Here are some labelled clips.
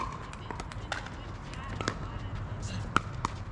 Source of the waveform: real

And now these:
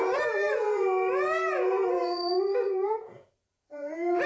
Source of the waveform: fake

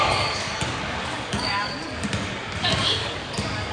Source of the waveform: fake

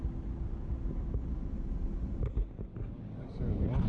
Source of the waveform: real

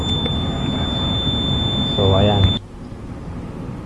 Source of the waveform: real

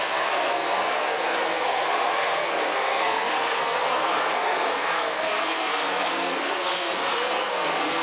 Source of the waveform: fake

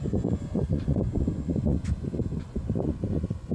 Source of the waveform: fake